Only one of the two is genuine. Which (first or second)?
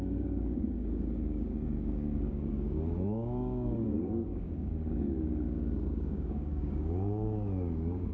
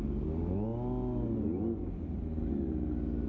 second